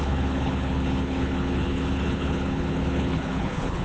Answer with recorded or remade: remade